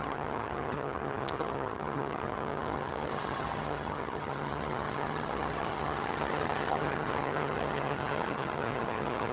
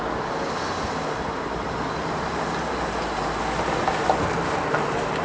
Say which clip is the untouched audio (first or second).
second